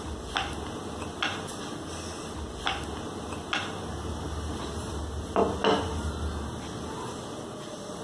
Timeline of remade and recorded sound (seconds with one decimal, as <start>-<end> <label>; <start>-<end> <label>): 0.0-8.0 recorded